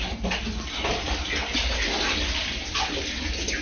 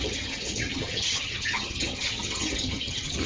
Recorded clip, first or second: first